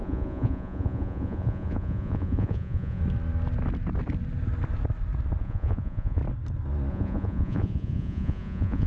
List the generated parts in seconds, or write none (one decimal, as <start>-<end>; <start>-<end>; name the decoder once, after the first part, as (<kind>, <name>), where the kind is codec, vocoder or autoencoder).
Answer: 0.0-3.0 (vocoder, Vocos); 5.4-6.2; 6.9-8.9